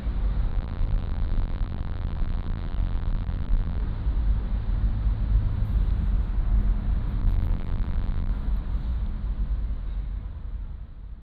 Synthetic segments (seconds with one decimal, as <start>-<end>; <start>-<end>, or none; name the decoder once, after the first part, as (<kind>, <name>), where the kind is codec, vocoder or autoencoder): 0.5-3.8 (vocoder, BigVGAN v2); 7.2-8.3

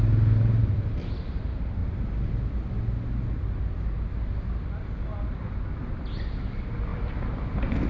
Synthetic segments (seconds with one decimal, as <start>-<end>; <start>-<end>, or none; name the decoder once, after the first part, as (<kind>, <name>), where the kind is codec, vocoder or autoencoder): 6.9-7.9 (vocoder, BigVGAN v2)

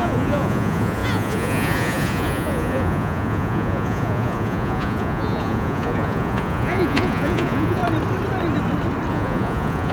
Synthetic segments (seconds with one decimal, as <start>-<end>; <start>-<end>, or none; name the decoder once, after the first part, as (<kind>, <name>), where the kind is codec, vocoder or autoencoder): 0.0-7.8 (vocoder, Vocos); 9.1-9.9

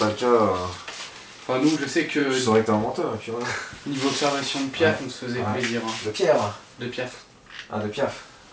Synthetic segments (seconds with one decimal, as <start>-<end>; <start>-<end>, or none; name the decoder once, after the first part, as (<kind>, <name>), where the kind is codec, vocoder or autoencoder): none

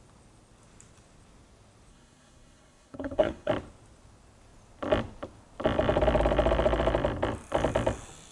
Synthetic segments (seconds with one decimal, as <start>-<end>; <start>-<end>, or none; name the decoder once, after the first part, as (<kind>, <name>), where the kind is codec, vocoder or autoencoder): 1.9-3.5 (codec, SNAC)

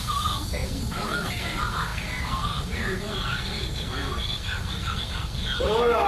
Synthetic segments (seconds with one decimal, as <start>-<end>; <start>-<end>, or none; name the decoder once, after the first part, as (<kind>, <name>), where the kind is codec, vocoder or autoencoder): 0.0-6.1 (codec, SNAC)

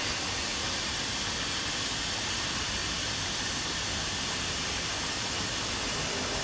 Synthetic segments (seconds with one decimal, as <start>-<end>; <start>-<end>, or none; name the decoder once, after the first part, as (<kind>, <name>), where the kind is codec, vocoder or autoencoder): 0.0-2.8 (vocoder, BigVGAN v2); 4.3-6.4